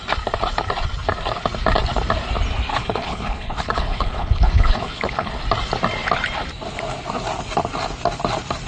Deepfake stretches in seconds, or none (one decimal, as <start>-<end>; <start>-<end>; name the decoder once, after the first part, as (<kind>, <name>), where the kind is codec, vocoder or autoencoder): 2.7-5.3 (codec, HILCodec)